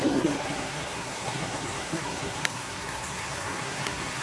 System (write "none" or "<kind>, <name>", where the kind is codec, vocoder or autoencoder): codec, SNAC